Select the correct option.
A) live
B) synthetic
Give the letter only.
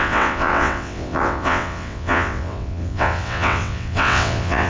B